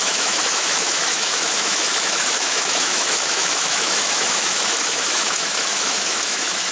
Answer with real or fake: fake